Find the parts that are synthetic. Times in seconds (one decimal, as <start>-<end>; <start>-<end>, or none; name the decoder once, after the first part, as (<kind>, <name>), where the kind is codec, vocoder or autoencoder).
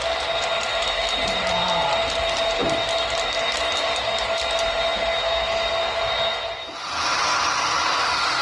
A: none